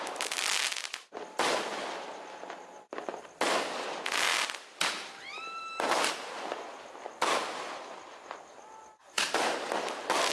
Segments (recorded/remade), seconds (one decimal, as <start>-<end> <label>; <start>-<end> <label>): 0.0-10.3 recorded